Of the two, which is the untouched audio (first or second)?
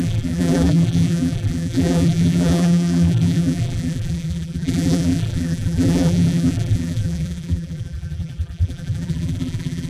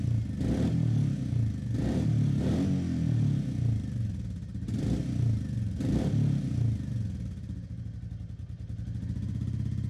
second